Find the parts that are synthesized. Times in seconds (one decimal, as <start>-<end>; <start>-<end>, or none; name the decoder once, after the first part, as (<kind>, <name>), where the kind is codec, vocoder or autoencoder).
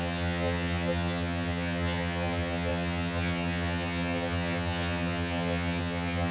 0.0-6.3 (vocoder, HiFi-GAN)